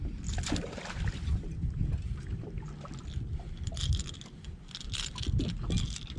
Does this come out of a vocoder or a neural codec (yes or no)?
yes